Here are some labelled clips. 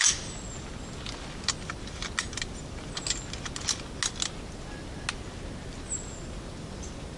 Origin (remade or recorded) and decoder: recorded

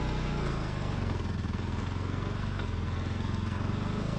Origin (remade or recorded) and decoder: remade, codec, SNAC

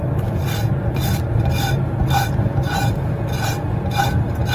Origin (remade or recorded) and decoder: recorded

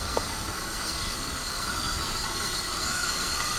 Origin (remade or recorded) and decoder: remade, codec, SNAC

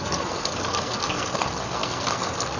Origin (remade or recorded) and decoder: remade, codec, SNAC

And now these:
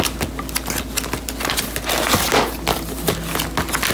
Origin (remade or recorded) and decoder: recorded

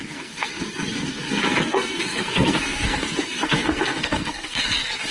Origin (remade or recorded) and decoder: remade, codec, SNAC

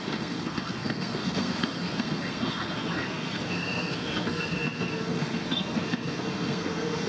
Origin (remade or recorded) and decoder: remade, codec, SNAC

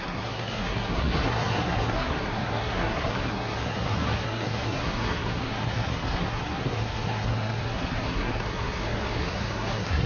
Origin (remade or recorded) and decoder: remade, codec, SNAC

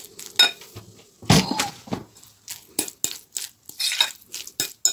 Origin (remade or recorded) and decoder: recorded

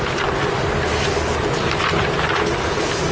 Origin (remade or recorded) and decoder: recorded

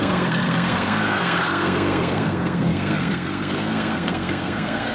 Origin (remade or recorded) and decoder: remade, codec, SNAC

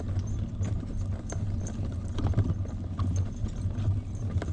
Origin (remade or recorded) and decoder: recorded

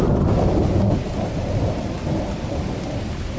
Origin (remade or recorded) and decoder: recorded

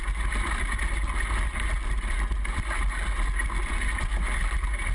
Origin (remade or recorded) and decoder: recorded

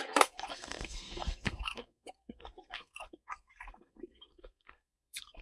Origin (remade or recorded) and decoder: remade, codec, SNAC